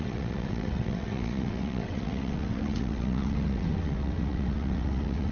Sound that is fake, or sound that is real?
fake